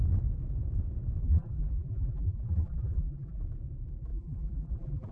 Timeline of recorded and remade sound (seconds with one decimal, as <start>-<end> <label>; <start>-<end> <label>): 0.0-1.2 recorded; 1.2-3.4 remade; 3.4-4.1 recorded; 4.1-5.1 remade